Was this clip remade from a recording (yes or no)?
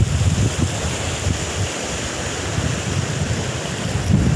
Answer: no